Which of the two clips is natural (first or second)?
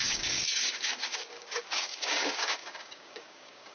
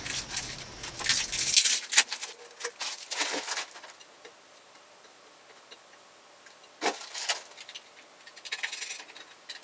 second